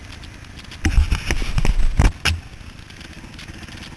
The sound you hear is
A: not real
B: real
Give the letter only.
B